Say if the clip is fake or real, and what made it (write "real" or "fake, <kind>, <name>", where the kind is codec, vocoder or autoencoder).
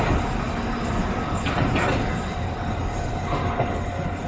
real